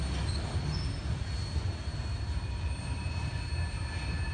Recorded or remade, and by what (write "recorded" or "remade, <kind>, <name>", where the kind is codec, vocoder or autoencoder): recorded